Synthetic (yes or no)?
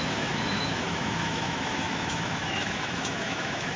yes